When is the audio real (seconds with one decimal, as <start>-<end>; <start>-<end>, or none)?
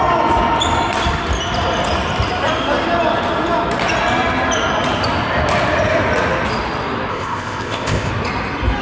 0.0-7.1; 8.1-8.8